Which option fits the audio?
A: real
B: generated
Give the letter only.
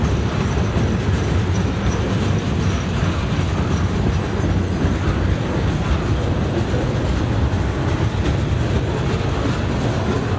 A